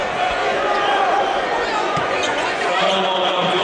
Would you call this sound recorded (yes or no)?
no